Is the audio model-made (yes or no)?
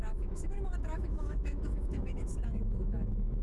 yes